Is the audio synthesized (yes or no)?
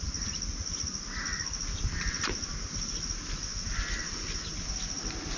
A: no